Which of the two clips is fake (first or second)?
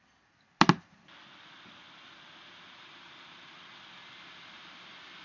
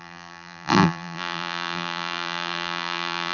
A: second